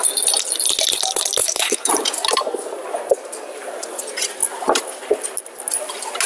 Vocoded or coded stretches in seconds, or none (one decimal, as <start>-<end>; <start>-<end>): 1.4-1.9